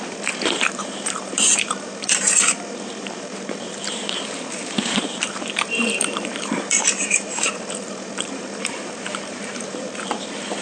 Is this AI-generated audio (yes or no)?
yes